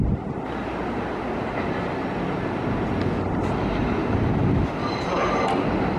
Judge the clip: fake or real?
real